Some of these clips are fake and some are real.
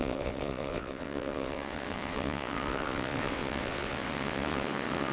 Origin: fake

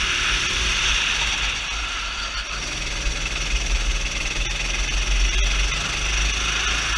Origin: real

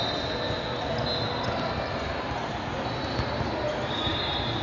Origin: real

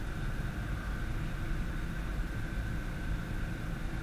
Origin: real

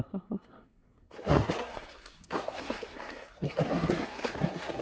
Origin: fake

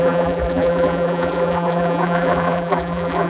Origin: fake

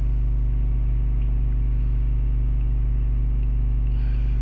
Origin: real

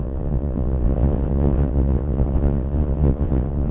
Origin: fake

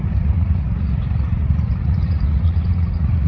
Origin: fake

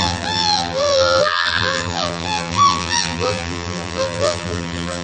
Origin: fake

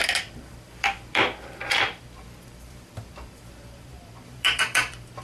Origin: fake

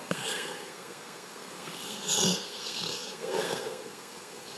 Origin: fake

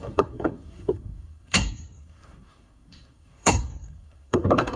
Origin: fake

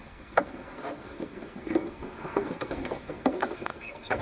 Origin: fake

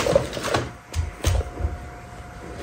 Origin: real